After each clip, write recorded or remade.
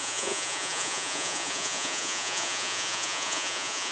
remade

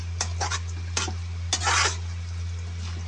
recorded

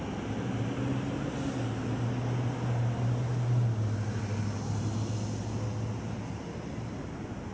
recorded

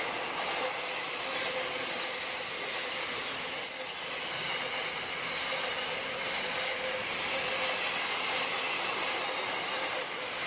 recorded